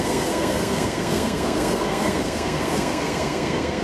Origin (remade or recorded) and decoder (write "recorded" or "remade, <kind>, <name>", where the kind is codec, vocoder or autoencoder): remade, codec, SNAC